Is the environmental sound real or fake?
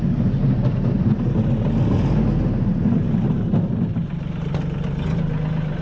real